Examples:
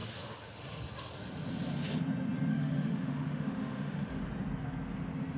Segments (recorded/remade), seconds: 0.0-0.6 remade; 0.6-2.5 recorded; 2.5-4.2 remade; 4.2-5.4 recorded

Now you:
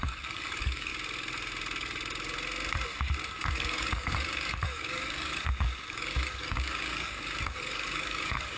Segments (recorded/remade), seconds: 0.0-0.9 remade; 0.9-3.3 recorded; 3.3-8.6 remade

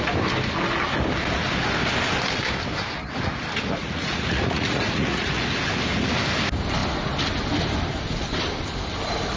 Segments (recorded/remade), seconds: 0.0-3.8 recorded; 3.8-5.4 remade; 5.4-9.4 recorded

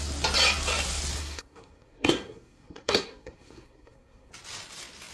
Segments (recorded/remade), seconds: 0.0-1.2 recorded; 1.2-4.3 remade; 4.3-5.1 recorded

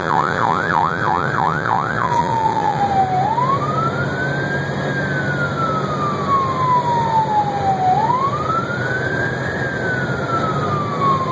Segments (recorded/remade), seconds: 0.0-2.8 remade; 2.8-11.3 recorded

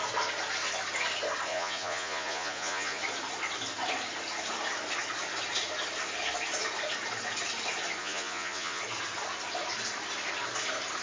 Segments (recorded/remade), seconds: 0.0-1.5 recorded; 1.5-3.0 remade; 3.0-8.0 recorded; 8.0-8.8 remade; 8.8-11.0 recorded

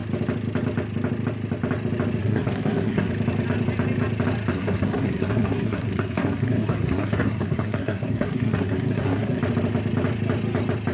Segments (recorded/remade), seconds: 0.0-2.2 recorded; 2.2-3.1 remade; 3.1-4.5 recorded; 4.5-9.4 remade; 9.4-10.9 recorded